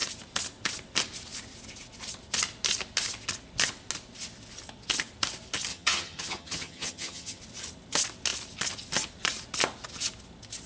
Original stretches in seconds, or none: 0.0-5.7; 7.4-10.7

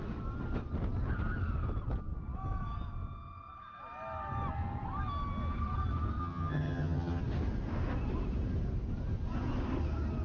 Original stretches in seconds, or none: 0.0-6.2; 7.2-10.2

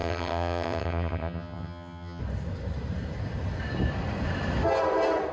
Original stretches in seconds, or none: 2.2-5.3

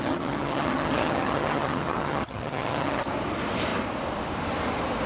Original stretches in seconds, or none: 3.0-5.1

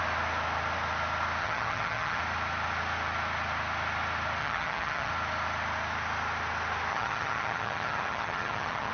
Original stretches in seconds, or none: 0.0-1.4; 2.2-4.4; 5.1-6.9

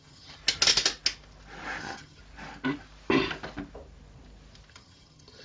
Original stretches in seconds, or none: 0.4-1.8; 2.2-4.7

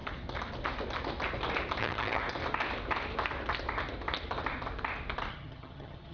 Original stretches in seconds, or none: 0.0-1.8; 2.2-5.3